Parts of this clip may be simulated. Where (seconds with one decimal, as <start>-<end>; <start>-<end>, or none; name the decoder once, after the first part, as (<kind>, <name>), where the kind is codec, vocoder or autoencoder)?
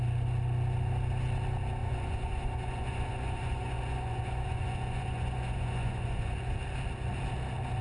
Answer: 1.8-6.5 (vocoder, Vocos)